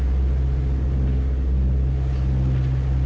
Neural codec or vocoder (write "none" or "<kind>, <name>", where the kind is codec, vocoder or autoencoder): none